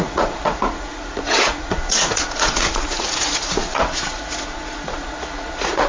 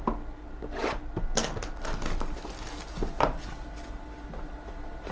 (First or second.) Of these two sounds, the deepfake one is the first